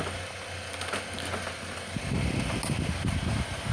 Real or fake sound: real